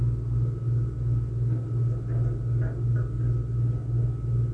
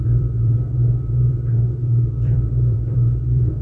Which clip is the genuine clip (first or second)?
first